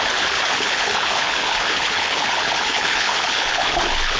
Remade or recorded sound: remade